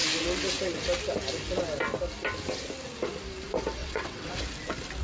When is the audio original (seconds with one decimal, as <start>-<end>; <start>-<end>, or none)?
0.0-3.8; 4.4-5.0